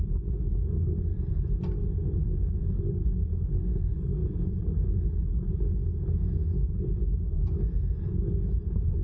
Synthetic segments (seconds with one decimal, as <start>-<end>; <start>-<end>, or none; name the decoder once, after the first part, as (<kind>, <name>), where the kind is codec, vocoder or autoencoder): 1.1-1.8 (vocoder, BigVGAN v2); 4.2-5.1; 6.6-7.5